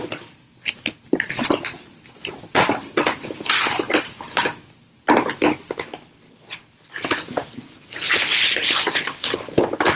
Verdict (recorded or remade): recorded